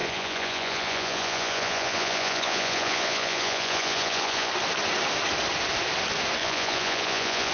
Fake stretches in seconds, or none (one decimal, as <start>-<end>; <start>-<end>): 0.0-4.5; 6.4-7.5